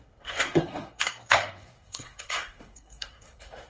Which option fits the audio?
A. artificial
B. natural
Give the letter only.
A